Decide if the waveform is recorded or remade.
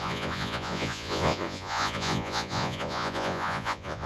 remade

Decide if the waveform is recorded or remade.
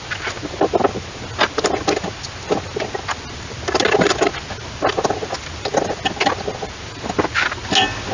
recorded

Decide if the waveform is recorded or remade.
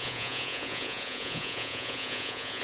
remade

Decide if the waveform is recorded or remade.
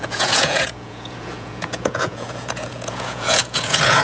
remade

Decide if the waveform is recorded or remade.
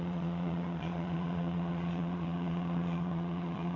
remade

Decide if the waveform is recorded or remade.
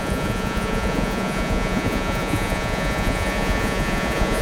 remade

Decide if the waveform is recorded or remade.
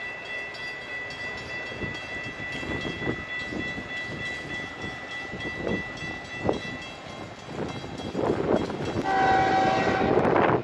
recorded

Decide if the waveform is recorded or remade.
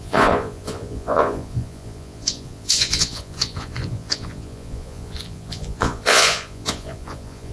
remade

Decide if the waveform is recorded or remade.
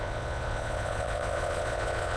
remade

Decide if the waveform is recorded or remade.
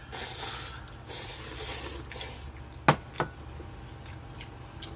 recorded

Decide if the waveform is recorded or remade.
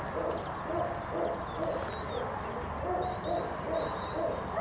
recorded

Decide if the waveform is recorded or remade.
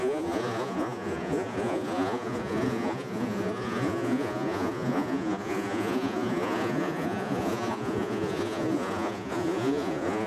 remade